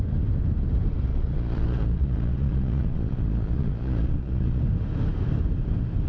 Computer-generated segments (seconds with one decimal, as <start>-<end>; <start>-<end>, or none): 1.1-4.6